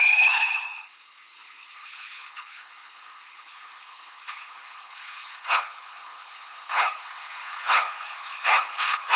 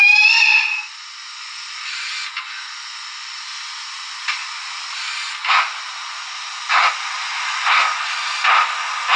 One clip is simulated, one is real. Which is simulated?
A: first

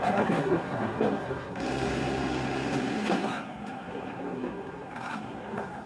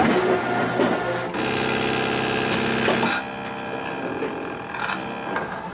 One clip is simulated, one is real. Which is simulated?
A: first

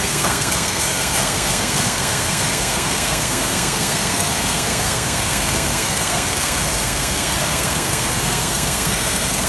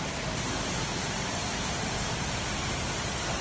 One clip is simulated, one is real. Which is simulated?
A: first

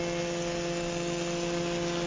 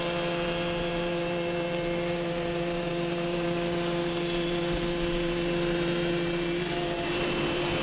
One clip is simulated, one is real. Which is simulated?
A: second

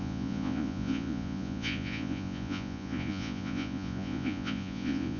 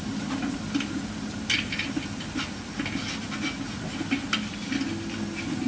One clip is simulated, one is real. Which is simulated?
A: first